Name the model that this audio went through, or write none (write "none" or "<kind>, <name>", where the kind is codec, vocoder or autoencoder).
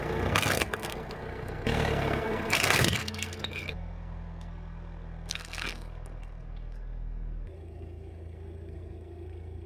codec, SNAC